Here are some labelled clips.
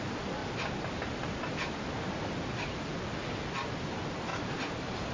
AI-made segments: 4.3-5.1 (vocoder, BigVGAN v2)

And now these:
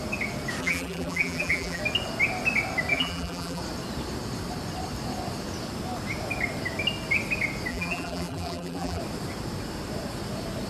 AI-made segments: 0.6-1.8 (vocoder, BigVGAN v2); 2.9-3.6; 7.7-9.0